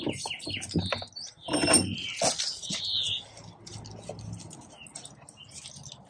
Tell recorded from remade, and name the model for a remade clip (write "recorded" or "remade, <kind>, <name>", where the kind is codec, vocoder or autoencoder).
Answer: recorded